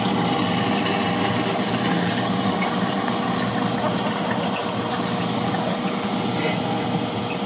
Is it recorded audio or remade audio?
recorded